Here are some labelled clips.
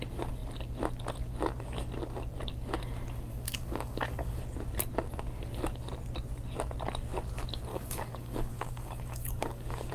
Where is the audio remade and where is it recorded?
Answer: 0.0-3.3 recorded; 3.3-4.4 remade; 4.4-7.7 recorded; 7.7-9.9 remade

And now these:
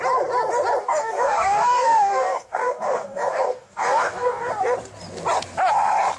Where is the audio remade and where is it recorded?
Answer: 0.0-0.8 recorded; 0.8-4.5 remade; 4.5-6.2 recorded

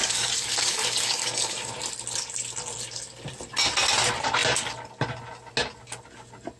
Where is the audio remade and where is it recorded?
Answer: 0.0-1.7 remade; 1.7-6.6 recorded

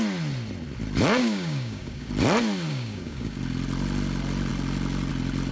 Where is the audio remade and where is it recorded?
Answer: 0.0-1.2 recorded; 1.2-2.1 remade; 2.1-2.7 recorded; 2.7-3.4 remade; 3.4-5.5 recorded

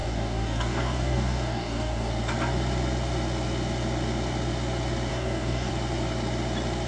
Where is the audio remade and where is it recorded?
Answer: 0.0-2.1 remade; 2.1-5.1 recorded; 5.1-5.7 remade; 5.7-6.9 recorded

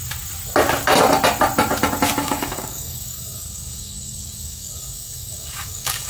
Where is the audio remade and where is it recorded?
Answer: 0.0-2.2 recorded; 2.2-6.1 remade